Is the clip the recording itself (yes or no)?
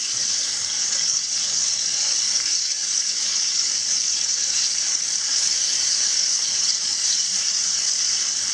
no